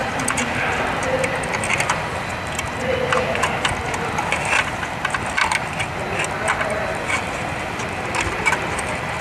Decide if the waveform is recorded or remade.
recorded